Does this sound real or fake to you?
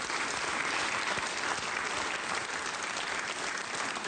real